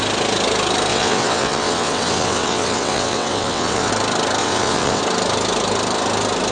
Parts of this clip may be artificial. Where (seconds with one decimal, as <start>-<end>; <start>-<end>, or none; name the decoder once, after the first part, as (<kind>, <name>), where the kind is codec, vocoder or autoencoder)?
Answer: 0.9-3.9 (vocoder, WaveNeXt); 4.4-5.0